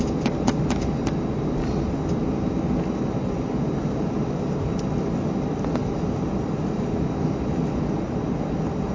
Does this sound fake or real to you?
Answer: real